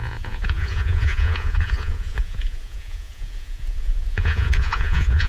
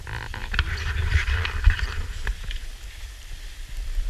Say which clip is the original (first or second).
second